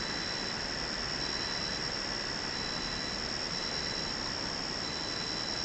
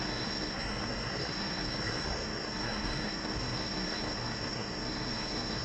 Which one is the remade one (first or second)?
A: second